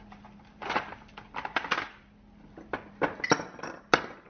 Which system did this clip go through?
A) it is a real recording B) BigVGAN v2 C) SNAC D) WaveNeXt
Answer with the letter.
A